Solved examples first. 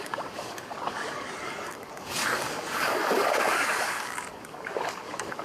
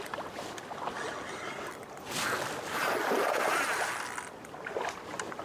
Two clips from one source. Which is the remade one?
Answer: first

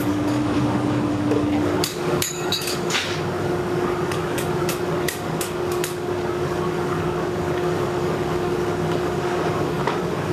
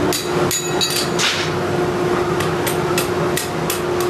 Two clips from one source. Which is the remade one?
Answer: first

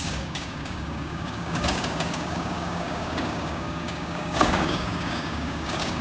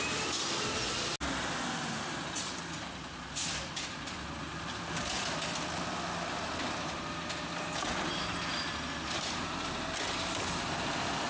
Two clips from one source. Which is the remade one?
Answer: first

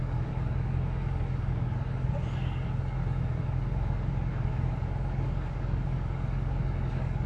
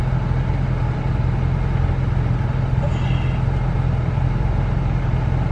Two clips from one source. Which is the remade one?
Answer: first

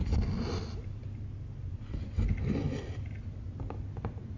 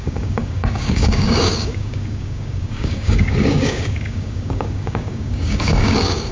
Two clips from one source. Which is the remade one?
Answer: second